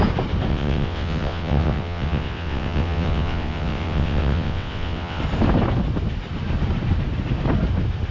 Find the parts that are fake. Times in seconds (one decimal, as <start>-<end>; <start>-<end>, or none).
0.5-5.2